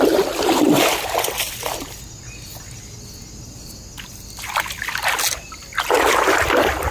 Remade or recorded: recorded